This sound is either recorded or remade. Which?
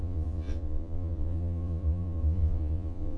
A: remade